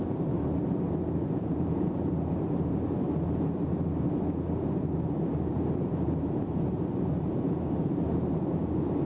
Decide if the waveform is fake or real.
fake